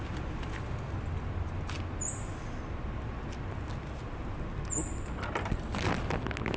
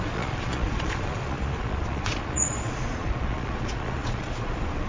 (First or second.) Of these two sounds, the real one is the first